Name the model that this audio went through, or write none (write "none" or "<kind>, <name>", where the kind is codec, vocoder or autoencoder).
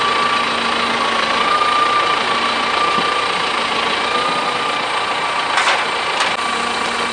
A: none